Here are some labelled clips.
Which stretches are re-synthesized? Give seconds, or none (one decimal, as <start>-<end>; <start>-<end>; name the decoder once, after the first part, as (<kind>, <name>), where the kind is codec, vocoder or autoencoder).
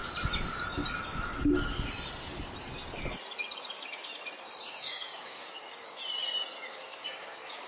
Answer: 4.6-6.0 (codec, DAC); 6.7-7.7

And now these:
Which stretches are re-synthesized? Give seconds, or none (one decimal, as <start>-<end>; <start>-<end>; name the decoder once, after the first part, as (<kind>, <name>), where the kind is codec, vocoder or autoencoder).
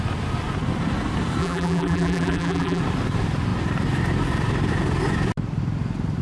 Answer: 1.4-2.8 (vocoder, BigVGAN v2)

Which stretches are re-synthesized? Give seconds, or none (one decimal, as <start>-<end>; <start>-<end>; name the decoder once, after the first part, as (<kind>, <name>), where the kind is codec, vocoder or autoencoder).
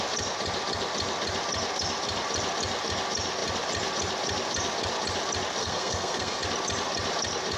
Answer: 5.6-6.4 (codec, SNAC)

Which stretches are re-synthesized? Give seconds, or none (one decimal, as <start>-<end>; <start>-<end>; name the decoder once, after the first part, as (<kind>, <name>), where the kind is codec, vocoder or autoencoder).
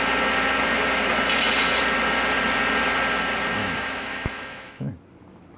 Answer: 3.6-4.9 (autoencoder, DAC-VAE)